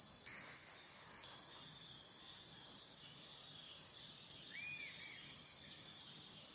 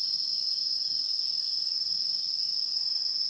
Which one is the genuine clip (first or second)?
first